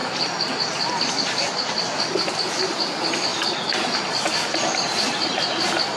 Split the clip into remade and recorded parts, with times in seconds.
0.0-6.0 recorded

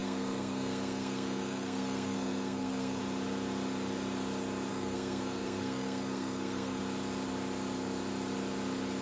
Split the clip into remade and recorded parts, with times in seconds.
0.0-3.0 remade; 3.0-4.7 recorded; 4.7-6.8 remade; 6.8-9.0 recorded

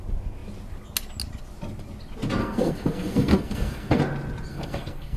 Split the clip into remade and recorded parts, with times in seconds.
0.0-2.4 recorded; 2.4-4.0 remade; 4.0-4.5 recorded; 4.5-5.2 remade

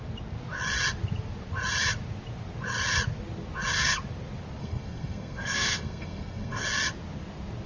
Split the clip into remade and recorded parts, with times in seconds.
0.0-4.6 recorded; 4.6-6.6 remade; 6.6-7.7 recorded

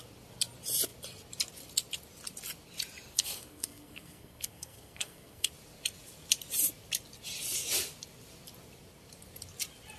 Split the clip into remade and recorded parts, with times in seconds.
0.0-3.1 recorded; 3.1-5.5 remade; 5.5-10.0 recorded

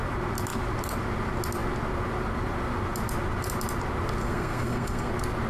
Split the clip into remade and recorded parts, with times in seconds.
0.0-4.2 recorded; 4.2-5.1 remade; 5.1-5.5 recorded

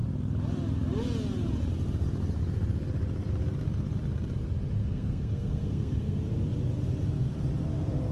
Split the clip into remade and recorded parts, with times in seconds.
0.0-4.8 recorded; 4.8-6.2 remade; 6.2-8.1 recorded

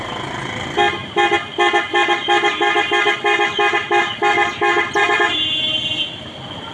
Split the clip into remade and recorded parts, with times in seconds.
0.0-6.7 recorded